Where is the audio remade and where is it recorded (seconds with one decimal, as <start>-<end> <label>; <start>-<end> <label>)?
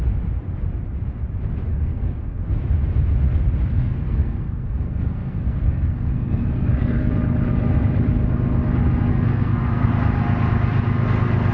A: 0.0-1.7 recorded; 1.7-2.4 remade; 2.4-3.7 recorded; 3.7-7.1 remade; 7.1-9.1 recorded; 9.1-9.9 remade; 9.9-11.5 recorded